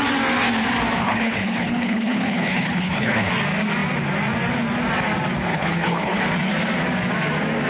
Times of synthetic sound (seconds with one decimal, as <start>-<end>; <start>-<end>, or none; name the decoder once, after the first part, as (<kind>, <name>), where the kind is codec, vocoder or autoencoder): 1.0-3.3 (codec, HILCodec); 5.5-6.2